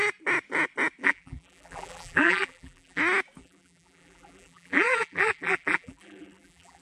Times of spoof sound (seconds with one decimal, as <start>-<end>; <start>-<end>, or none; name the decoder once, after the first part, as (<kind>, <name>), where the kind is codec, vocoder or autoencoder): 1.0-3.0 (vocoder, BigVGAN v2); 3.4-6.8